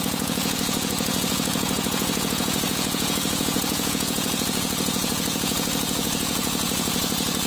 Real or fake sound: fake